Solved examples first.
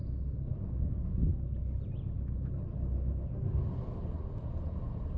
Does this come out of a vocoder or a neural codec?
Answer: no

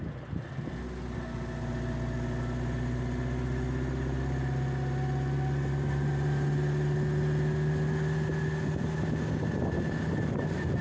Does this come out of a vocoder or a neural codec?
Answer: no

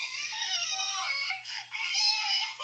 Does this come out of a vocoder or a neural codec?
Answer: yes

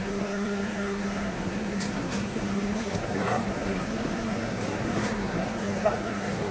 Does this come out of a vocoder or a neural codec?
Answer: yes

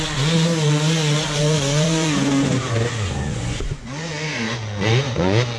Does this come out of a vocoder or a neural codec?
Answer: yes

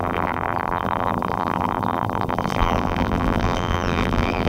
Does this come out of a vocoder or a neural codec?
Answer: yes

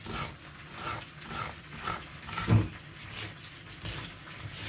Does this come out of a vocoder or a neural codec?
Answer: no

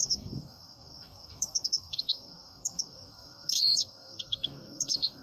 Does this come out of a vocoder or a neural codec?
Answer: yes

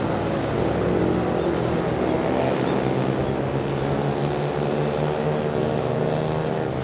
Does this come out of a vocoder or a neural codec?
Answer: no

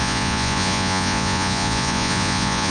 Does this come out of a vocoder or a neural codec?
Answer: yes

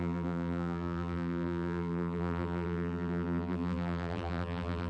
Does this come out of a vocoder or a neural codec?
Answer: yes